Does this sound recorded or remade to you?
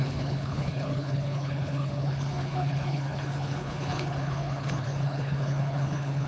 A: remade